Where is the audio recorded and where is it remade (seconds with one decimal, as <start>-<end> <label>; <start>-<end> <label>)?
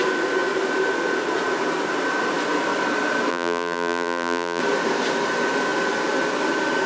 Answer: 0.0-3.3 recorded; 3.3-4.6 remade; 4.6-6.9 recorded